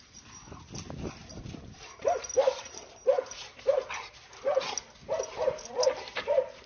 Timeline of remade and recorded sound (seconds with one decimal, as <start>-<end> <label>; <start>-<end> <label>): 0.0-6.7 recorded